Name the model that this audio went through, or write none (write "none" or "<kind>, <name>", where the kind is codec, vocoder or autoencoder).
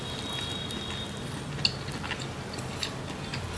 none